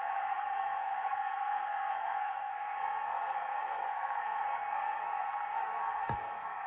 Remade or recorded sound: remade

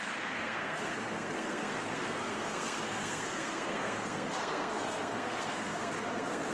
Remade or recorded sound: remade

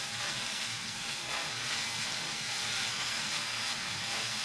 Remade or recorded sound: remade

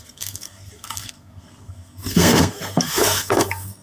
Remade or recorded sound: remade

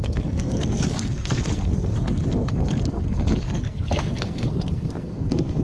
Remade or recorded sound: remade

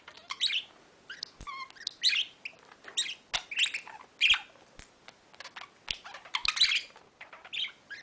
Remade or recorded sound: recorded